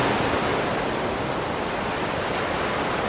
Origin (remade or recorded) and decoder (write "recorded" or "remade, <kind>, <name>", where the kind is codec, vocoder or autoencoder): recorded